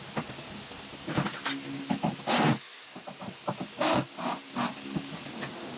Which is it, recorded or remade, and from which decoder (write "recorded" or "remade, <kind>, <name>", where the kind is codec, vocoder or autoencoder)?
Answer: recorded